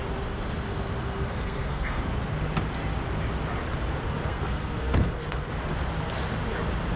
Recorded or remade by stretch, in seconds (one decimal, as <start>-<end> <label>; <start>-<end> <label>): 0.0-0.7 recorded; 0.7-2.0 remade; 2.0-4.2 recorded; 4.2-5.5 remade; 5.5-7.0 recorded